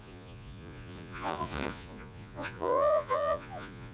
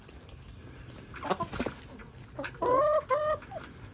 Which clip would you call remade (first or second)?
first